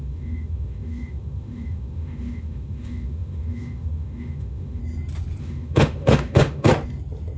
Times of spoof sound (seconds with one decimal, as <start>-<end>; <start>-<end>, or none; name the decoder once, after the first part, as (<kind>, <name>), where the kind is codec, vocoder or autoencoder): 0.0-4.8 (autoencoder, DAC-VAE); 5.4-6.7